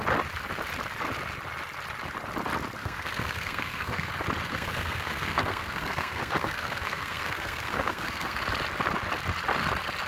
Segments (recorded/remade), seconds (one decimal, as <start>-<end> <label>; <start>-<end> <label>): 0.0-2.8 recorded; 2.8-4.1 remade; 4.1-4.5 recorded; 4.5-8.4 remade; 8.4-10.1 recorded